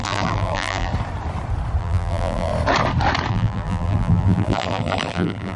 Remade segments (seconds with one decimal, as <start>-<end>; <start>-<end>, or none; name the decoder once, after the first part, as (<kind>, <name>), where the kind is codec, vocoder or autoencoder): 0.0-0.9 (vocoder, BigVGAN v2); 1.8-2.5; 3.3-5.6